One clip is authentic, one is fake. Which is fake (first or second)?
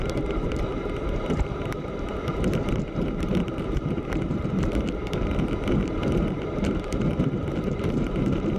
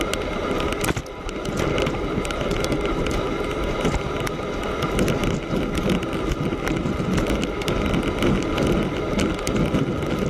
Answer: first